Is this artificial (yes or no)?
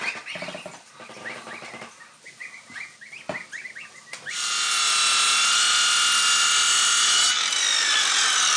no